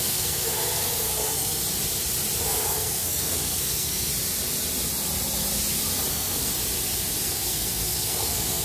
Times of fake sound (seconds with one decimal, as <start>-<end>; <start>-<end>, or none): 0.0-1.6; 2.4-4.1; 6.1-6.5; 7.2-8.6